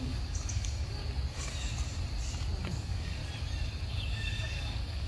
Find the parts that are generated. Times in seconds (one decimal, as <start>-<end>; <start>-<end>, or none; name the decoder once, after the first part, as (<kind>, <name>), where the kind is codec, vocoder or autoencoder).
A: 0.0-1.0 (codec, DAC); 2.7-3.2; 3.9-5.1